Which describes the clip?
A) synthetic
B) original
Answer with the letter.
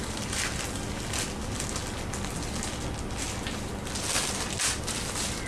B